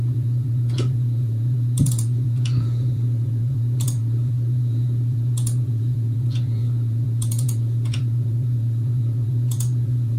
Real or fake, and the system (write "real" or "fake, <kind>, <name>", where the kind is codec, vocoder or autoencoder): fake, vocoder, Vocos